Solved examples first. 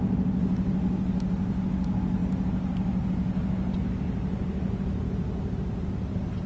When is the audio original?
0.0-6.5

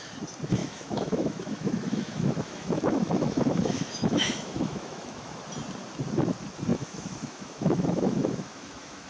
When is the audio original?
0.0-0.6; 5.4-6.7

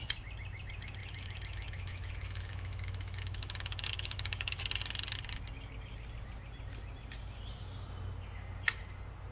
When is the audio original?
0.0-1.0; 4.6-9.3

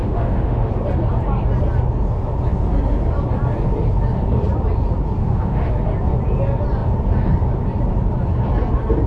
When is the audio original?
0.7-5.2; 5.7-9.1

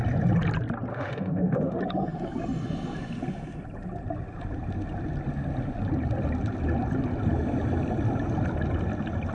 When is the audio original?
0.0-0.9; 1.8-9.3

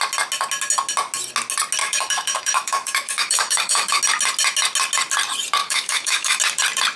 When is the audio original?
0.0-1.8; 4.0-5.6; 6.4-7.0